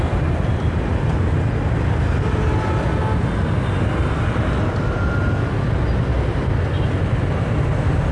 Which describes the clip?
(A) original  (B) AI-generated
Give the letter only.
A